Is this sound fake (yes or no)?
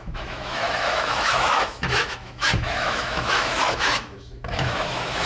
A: yes